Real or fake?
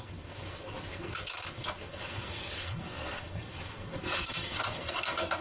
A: fake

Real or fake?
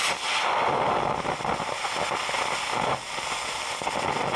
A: real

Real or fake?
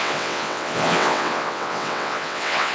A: fake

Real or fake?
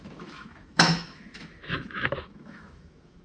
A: fake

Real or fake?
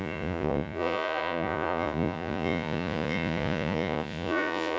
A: fake